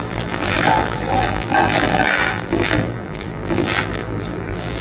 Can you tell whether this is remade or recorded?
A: remade